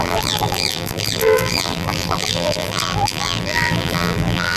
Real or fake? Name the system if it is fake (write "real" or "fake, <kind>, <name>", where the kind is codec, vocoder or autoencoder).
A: fake, vocoder, BigVGAN v2